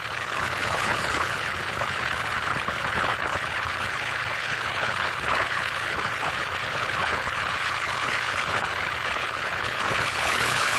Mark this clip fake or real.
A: fake